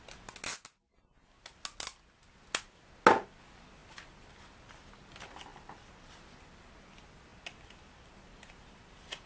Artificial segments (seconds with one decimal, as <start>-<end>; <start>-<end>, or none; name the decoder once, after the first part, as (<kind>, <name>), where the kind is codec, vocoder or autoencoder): 5.5-6.1 (vocoder, BigVGAN v2); 7.3-8.1